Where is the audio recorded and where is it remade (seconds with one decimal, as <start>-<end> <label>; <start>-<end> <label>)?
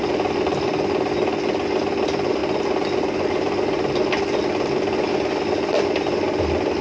0.0-6.8 recorded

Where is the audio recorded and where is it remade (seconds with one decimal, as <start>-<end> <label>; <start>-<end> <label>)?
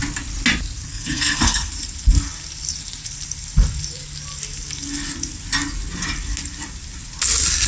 0.0-0.9 recorded; 0.9-1.7 remade; 1.7-7.7 recorded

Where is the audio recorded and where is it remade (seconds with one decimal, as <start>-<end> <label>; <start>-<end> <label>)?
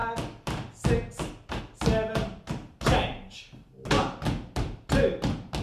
0.0-5.6 recorded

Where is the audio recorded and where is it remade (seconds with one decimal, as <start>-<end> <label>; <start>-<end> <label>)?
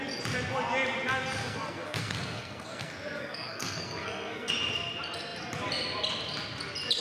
0.0-1.4 recorded; 1.4-4.5 remade; 4.5-7.0 recorded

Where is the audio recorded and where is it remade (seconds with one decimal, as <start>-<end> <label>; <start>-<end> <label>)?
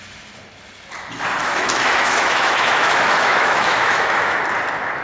0.0-1.4 recorded; 1.4-4.4 remade; 4.4-5.0 recorded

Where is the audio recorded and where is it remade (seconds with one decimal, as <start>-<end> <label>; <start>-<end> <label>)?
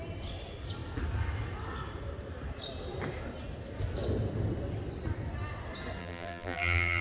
0.0-6.0 recorded; 6.0-7.0 remade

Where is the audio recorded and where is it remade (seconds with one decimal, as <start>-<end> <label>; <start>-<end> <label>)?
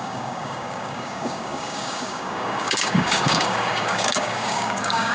0.0-5.1 remade